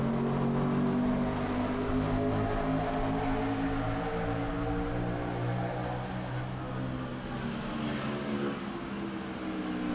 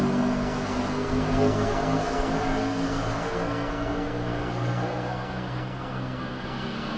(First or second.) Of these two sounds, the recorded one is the first